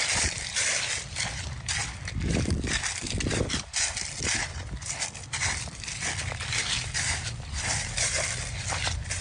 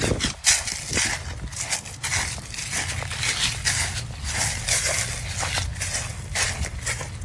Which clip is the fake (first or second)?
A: first